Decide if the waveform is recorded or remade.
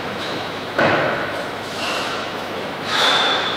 remade